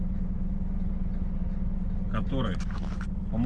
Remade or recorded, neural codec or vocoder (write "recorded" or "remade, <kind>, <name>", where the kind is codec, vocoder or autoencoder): recorded